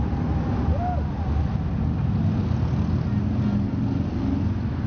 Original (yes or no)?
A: yes